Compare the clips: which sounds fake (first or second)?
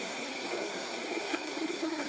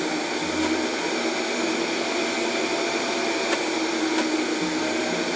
first